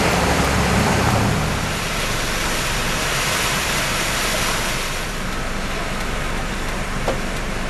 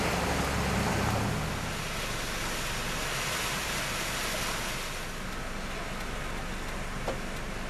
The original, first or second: second